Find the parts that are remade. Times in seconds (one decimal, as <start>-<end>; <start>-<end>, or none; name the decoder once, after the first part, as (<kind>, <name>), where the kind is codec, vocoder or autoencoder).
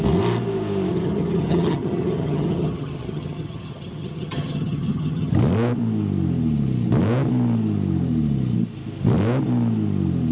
0.9-5.3 (vocoder, HiFi-GAN)